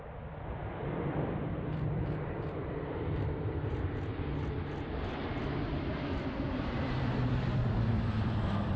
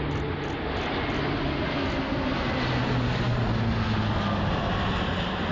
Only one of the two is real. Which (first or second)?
second